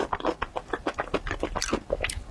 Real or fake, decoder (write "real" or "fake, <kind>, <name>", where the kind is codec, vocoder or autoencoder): real